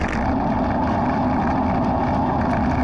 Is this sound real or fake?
real